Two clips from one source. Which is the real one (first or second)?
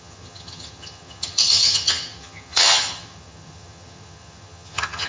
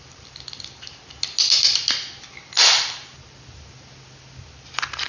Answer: second